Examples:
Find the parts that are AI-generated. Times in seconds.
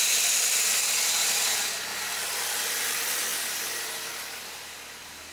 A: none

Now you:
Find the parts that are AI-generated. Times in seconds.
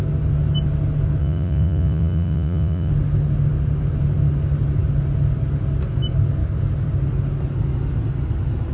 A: 1.2-2.9 (vocoder, Vocos)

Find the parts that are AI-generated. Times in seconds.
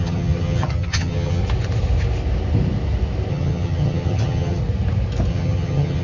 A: 0.0-1.4 (vocoder, HiFi-GAN); 3.3-4.6; 5.3-6.0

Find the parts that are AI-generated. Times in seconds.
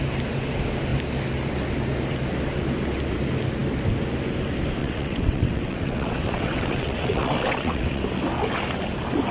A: 4.8-8.0 (vocoder, WaveNeXt)